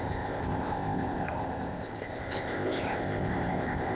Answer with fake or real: fake